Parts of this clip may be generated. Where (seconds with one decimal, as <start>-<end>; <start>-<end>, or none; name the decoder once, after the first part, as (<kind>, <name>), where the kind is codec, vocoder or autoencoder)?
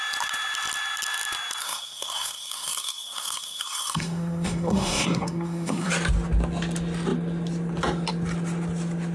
1.6-5.9 (codec, SNAC)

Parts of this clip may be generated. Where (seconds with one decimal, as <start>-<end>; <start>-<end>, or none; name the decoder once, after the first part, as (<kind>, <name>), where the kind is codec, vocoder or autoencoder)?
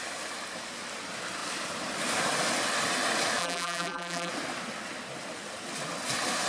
3.4-4.3 (vocoder, BigVGAN v2)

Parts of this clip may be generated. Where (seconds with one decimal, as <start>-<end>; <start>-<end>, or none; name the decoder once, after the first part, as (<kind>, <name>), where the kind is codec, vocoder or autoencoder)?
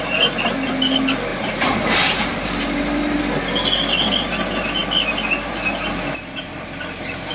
1.3-3.2 (vocoder, BigVGAN v2)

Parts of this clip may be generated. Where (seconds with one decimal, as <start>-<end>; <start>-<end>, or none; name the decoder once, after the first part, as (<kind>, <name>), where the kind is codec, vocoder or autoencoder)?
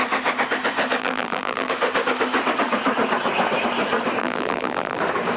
1.0-1.7 (vocoder, BigVGAN v2); 4.2-5.0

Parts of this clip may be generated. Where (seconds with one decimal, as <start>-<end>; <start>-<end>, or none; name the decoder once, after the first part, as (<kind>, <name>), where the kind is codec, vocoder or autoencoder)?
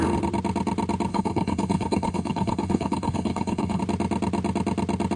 1.1-3.8 (codec, HILCodec)